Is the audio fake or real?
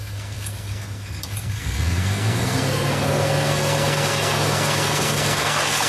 fake